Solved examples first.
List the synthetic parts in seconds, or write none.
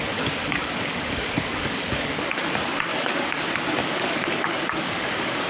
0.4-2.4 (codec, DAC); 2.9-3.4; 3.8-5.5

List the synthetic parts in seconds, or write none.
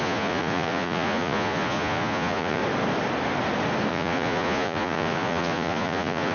0.0-2.6 (vocoder, Vocos); 3.9-6.3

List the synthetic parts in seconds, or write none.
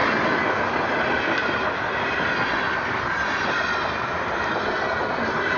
none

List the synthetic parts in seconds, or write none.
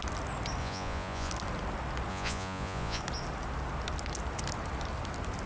0.6-1.3 (vocoder, Vocos); 2.1-3.0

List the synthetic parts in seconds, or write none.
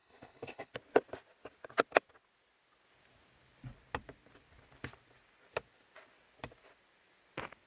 0.0-0.7 (codec, HILCodec)